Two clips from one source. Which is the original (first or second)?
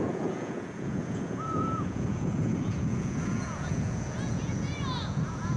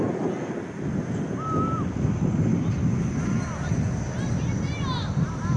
second